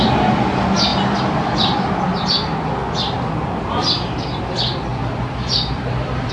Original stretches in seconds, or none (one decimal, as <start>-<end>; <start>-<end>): 0.0-0.9; 1.9-4.9